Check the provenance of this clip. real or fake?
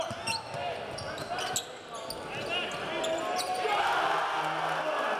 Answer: real